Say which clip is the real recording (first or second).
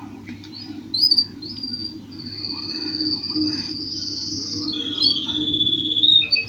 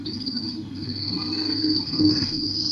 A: first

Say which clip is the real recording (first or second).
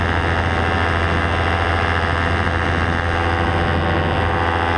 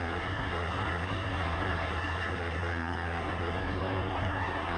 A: first